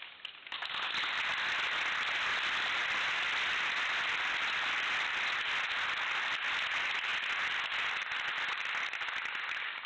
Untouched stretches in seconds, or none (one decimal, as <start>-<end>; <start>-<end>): 0.0-9.9